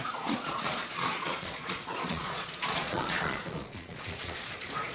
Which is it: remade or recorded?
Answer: remade